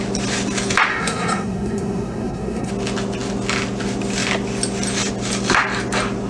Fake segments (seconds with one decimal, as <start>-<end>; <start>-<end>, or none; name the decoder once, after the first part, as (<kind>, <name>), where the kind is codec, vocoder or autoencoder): 0.9-2.7 (codec, SNAC)